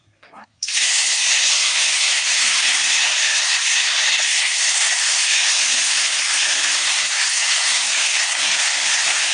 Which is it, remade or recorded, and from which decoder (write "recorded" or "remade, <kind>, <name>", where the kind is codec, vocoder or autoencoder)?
remade, codec, SNAC